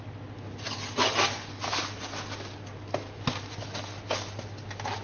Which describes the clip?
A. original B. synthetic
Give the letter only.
A